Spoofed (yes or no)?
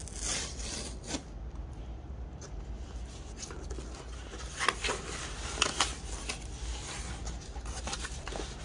no